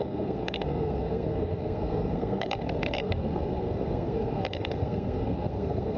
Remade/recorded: remade